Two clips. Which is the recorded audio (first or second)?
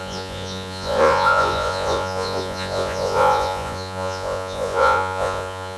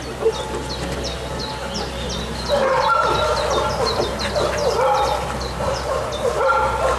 second